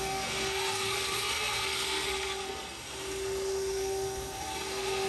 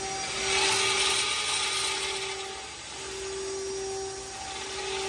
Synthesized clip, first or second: first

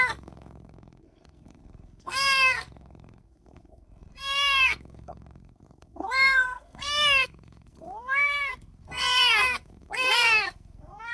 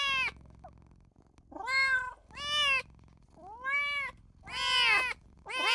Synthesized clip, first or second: first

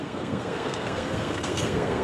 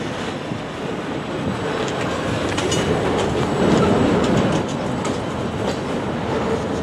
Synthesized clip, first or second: first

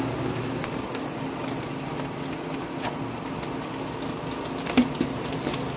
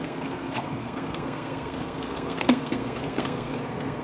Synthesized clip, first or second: second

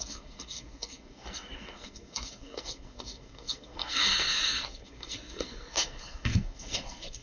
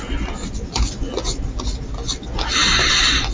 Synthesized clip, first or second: first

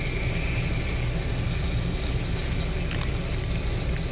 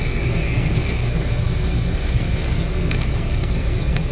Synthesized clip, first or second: second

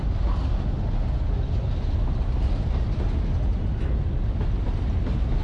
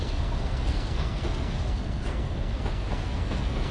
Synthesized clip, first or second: second